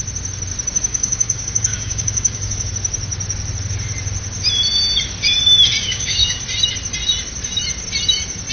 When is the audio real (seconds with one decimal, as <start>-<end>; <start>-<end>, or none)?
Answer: 0.0-0.9; 2.7-5.8; 6.4-8.5